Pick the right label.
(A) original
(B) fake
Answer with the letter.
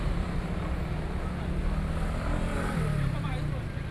A